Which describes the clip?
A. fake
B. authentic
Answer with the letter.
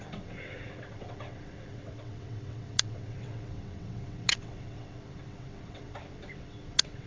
A